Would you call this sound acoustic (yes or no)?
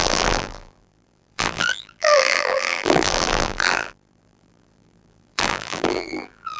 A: no